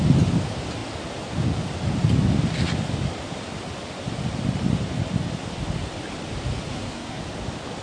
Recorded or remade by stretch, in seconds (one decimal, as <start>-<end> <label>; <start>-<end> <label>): 0.0-6.7 recorded; 6.7-7.2 remade; 7.2-7.8 recorded

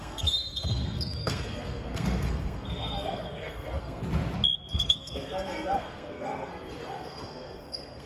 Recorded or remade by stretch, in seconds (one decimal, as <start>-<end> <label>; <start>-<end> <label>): 0.0-4.0 remade; 4.0-4.7 recorded; 4.7-8.1 remade

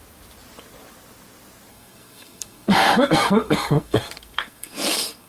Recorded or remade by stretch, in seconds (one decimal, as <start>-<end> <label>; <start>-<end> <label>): 0.0-1.7 recorded; 1.7-5.3 remade